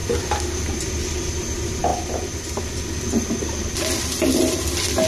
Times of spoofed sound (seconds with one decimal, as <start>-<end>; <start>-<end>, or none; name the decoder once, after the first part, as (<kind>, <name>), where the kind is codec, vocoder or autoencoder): 1.9-2.6 (vocoder, BigVGAN v2)